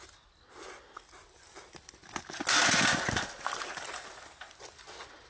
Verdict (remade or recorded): recorded